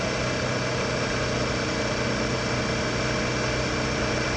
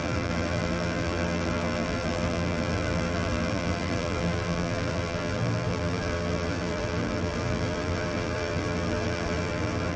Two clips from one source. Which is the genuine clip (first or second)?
first